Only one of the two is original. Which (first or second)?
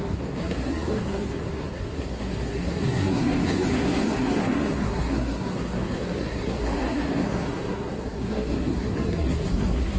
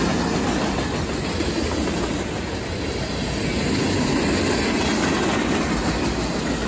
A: second